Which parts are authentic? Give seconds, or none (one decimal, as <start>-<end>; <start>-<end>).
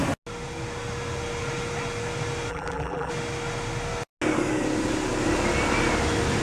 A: 0.0-2.5; 3.1-6.4